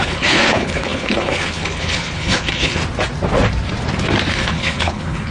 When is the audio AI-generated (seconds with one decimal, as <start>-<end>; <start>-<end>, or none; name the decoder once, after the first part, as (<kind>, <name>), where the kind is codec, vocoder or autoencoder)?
0.0-2.8 (codec, HILCodec); 4.3-5.3